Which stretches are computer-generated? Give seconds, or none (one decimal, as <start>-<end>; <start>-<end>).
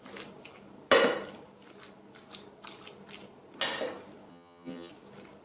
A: 4.3-4.9